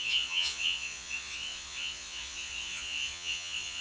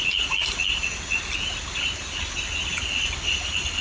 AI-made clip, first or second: first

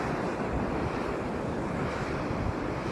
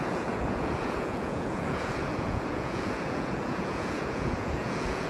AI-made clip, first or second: second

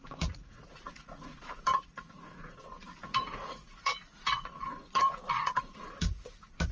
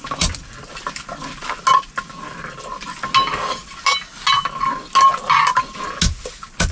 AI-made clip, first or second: first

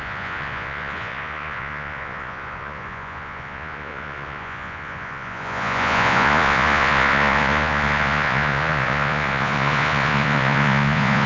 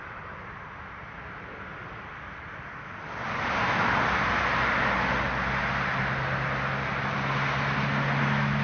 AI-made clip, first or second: first